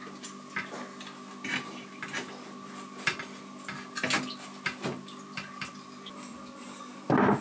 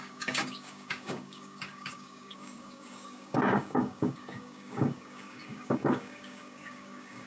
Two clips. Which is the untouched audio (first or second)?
first